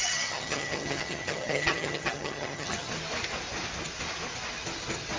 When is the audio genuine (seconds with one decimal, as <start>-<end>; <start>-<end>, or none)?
2.9-5.2